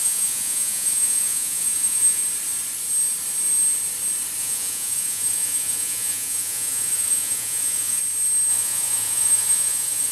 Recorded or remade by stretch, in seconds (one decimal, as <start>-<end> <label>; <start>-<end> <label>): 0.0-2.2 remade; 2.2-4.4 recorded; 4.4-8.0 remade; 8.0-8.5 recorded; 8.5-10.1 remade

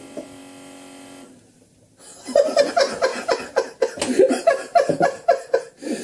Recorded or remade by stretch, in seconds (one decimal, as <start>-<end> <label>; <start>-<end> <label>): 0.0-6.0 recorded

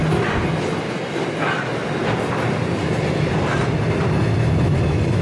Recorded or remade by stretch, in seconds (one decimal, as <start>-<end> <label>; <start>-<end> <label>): 0.0-5.2 recorded

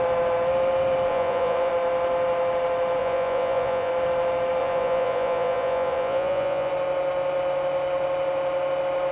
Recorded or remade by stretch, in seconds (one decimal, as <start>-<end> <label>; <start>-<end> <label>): 0.0-1.1 recorded; 1.1-1.7 remade; 1.7-3.0 recorded; 3.0-3.9 remade; 3.9-4.6 recorded; 4.6-6.7 remade; 6.7-9.1 recorded